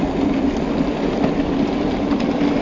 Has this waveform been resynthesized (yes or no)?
no